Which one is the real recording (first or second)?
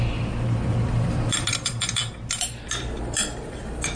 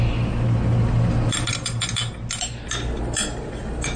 second